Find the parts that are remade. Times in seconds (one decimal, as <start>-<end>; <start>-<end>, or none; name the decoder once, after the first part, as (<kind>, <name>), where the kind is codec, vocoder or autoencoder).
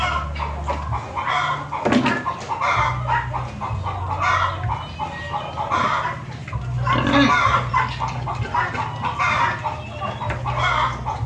none